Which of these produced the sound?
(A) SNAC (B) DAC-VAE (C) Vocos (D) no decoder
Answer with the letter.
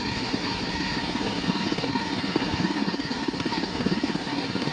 A